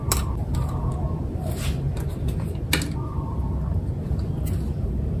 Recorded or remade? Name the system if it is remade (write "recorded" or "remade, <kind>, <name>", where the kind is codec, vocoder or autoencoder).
recorded